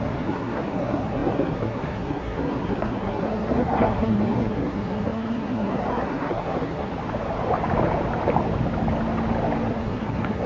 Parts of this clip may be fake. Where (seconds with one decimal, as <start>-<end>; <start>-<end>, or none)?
0.0-6.9; 9.7-10.5